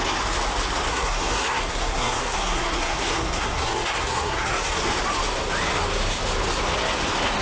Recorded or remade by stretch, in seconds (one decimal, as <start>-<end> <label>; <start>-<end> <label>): 0.0-0.9 recorded; 0.9-4.8 remade; 4.8-7.4 recorded

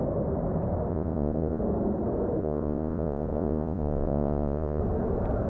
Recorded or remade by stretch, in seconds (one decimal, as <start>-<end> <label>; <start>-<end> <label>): 0.0-0.9 recorded; 0.9-1.6 remade; 1.6-2.4 recorded; 2.4-4.8 remade; 4.8-5.5 recorded

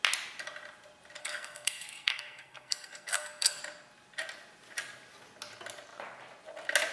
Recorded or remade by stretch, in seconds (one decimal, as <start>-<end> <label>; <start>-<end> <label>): 0.0-1.2 recorded; 1.2-3.6 remade; 3.6-6.9 recorded